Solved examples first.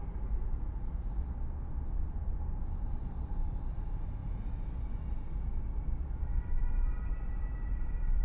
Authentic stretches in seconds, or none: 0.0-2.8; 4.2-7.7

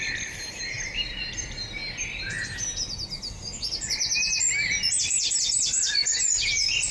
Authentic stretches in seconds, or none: 1.8-5.0